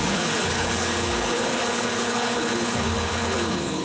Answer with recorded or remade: remade